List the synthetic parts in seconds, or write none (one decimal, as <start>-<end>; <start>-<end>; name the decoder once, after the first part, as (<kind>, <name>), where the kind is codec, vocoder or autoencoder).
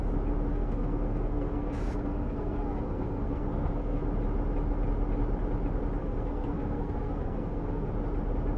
0.5-4.0 (codec, SNAC); 6.0-7.9